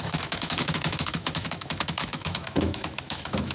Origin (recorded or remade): remade